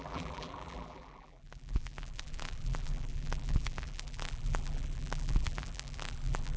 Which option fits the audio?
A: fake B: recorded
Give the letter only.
A